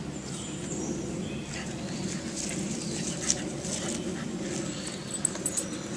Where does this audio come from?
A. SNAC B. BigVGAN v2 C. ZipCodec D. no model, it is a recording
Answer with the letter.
D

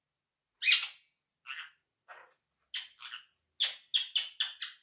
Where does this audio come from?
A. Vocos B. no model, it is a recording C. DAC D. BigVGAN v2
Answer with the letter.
B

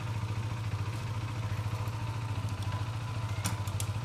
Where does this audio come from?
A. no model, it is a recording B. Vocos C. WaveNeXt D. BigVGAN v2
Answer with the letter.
A